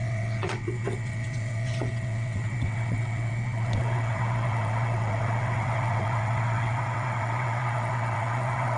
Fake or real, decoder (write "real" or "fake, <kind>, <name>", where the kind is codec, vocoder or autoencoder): fake, vocoder, WaveNeXt